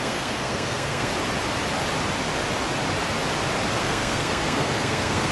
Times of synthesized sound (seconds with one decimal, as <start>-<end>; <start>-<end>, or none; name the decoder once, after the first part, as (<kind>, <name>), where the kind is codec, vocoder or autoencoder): 0.0-1.1 (codec, SNAC); 3.8-5.3